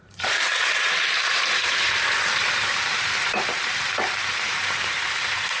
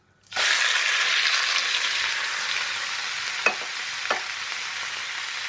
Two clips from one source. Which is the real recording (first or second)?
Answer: second